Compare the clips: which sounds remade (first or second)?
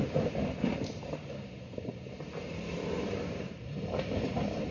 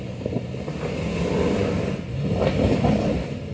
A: first